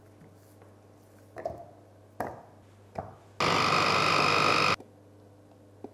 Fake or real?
real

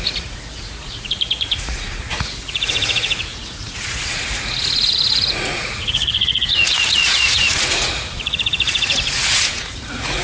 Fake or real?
fake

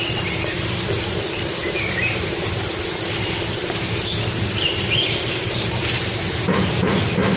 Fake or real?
fake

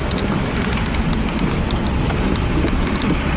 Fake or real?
real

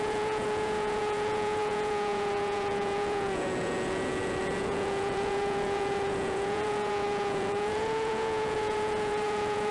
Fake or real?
fake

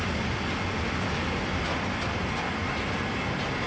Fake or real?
real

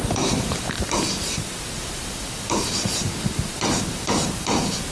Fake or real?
fake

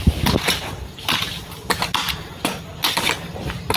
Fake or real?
real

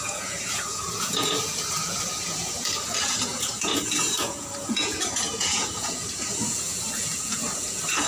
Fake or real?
fake